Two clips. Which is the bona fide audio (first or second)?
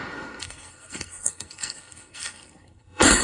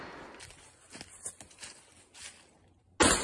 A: second